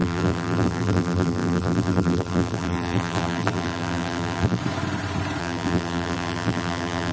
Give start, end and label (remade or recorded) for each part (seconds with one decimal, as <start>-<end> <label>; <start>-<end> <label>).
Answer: 0.0-4.6 remade; 4.6-5.4 recorded; 5.4-7.1 remade